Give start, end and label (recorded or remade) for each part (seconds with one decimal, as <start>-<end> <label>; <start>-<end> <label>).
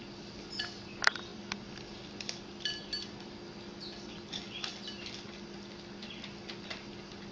0.0-7.3 recorded